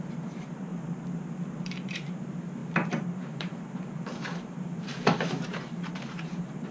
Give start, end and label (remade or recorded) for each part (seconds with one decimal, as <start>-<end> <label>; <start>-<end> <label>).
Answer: 0.0-0.7 remade; 0.7-1.6 recorded; 1.6-6.7 remade